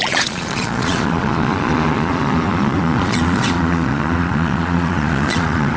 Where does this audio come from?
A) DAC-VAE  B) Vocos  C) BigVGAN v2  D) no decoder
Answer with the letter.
B